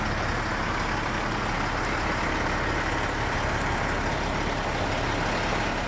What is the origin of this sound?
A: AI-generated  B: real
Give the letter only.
B